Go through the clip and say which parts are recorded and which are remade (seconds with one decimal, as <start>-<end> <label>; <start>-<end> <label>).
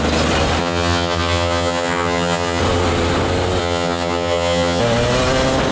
0.0-0.6 recorded; 0.6-2.6 remade; 2.6-3.6 recorded; 3.6-4.8 remade; 4.8-5.7 recorded